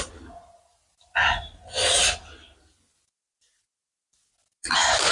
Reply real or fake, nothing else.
real